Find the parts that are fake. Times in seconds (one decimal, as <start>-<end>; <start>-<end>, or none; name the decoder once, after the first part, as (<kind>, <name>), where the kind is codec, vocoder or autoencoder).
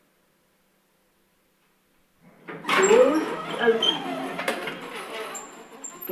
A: none